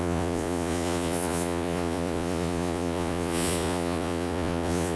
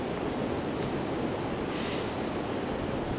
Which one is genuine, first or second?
second